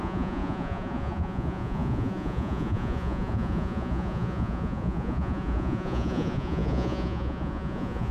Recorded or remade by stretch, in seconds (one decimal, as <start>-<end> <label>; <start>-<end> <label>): 0.0-8.1 remade